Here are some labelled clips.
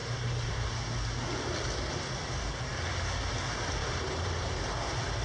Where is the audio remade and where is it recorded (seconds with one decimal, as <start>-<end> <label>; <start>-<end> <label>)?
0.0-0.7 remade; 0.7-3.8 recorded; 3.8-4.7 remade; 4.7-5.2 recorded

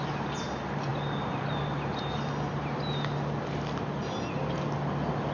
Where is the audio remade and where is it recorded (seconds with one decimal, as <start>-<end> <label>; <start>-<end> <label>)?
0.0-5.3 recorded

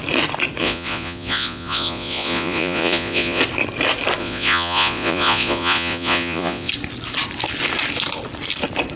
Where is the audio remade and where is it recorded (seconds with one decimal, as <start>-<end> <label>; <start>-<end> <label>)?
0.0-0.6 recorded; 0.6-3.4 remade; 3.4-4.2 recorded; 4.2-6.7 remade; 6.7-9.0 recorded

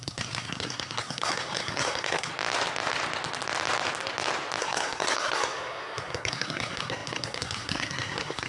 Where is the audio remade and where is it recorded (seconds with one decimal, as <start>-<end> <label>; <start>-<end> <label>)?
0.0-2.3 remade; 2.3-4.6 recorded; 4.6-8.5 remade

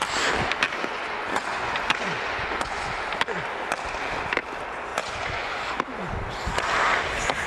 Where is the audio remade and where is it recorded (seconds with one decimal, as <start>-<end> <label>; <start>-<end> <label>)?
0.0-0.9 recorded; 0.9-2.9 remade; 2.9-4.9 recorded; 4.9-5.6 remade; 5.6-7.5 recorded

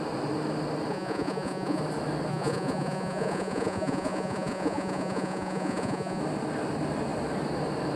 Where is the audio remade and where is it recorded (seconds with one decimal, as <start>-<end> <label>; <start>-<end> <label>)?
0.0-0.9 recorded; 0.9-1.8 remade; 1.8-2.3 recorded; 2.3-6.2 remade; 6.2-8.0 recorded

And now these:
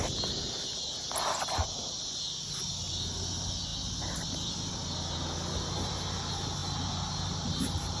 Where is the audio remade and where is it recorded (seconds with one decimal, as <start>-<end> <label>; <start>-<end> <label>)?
0.0-8.0 recorded